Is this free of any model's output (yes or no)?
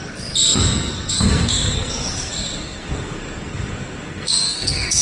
no